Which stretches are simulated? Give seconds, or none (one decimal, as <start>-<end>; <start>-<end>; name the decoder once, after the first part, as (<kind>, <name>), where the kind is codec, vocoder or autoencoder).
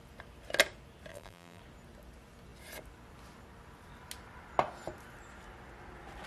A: 1.1-1.6 (vocoder, BigVGAN v2)